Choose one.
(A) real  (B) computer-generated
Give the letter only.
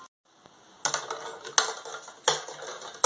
A